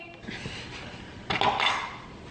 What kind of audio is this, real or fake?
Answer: real